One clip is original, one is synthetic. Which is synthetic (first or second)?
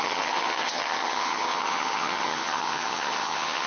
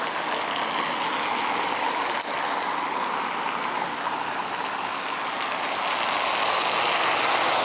first